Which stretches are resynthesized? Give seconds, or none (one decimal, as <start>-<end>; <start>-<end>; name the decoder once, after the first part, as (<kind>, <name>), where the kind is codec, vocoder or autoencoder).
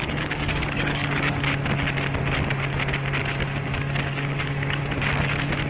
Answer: 0.0-1.4 (codec, DAC); 3.7-4.8